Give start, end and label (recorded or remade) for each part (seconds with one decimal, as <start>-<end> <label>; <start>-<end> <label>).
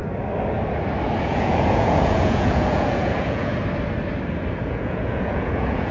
0.0-1.2 recorded; 1.2-3.5 remade; 3.5-4.6 recorded; 4.6-5.9 remade